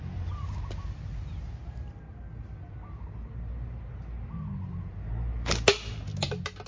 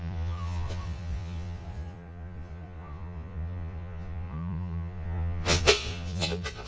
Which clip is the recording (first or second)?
first